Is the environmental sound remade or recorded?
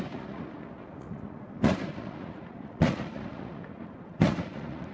remade